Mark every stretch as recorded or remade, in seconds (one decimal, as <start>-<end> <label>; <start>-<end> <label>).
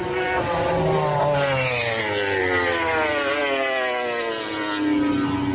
0.0-5.5 recorded